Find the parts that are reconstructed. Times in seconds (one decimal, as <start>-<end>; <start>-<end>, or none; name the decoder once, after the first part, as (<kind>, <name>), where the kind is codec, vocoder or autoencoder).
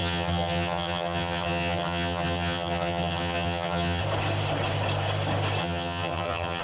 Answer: 0.0-4.0 (vocoder, HiFi-GAN); 5.6-6.6